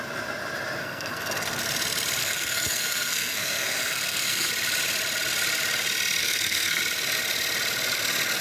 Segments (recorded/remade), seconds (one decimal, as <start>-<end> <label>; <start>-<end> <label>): 0.0-0.8 recorded; 0.8-1.6 remade; 1.6-2.2 recorded; 2.2-4.5 remade; 4.5-6.2 recorded; 6.2-6.8 remade; 6.8-8.4 recorded